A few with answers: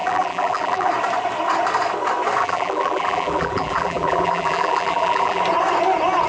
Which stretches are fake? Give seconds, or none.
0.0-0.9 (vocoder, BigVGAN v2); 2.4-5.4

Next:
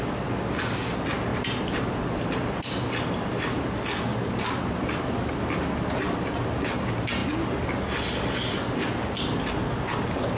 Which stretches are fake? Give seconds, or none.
1.3-3.6 (vocoder, BigVGAN v2); 4.1-5.1

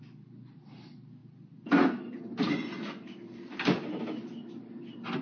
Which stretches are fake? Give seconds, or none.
1.2-4.0 (vocoder, BigVGAN v2)

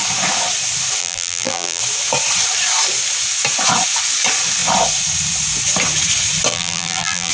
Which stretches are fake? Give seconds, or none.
1.0-1.8 (vocoder, BigVGAN v2); 6.5-7.3